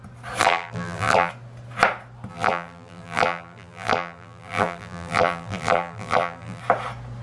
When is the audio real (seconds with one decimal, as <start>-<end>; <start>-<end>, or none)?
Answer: 0.0-0.4; 1.3-2.3; 6.6-7.2